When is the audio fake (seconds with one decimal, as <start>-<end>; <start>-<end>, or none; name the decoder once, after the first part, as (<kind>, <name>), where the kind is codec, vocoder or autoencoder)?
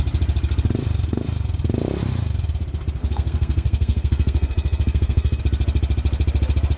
3.0-5.4 (codec, SNAC)